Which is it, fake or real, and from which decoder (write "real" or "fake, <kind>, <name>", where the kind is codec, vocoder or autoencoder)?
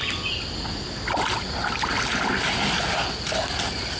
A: real